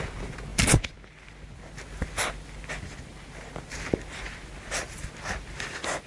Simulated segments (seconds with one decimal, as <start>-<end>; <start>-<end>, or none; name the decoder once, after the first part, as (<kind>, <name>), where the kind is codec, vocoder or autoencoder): none